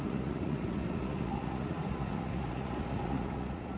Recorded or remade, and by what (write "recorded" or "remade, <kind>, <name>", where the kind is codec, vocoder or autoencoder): remade, vocoder, Vocos